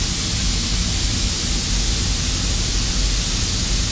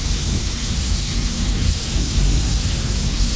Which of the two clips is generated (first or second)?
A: second